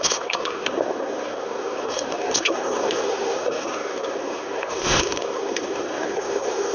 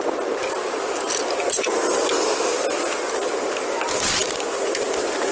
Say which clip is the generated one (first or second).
first